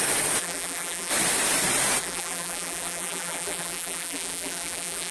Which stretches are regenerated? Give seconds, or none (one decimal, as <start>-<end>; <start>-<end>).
0.4-1.1; 2.0-5.1